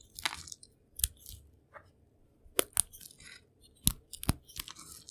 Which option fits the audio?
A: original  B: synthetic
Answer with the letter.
A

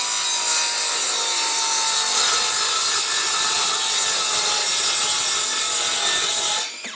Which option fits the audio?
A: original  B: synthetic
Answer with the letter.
A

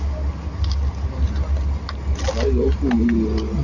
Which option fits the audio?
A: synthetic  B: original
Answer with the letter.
B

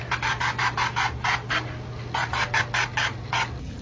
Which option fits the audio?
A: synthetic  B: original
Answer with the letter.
B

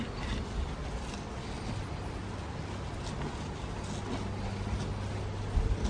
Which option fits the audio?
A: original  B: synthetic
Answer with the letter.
A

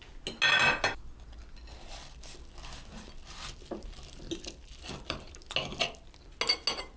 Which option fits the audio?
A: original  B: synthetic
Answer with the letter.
A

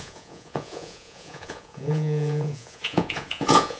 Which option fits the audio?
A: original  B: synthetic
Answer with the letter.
B